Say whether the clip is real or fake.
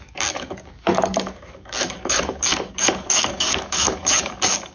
fake